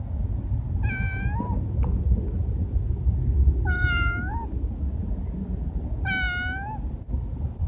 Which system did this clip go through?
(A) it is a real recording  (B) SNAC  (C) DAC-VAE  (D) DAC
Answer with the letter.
A